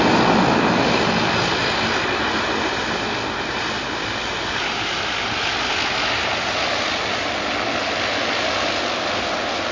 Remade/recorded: recorded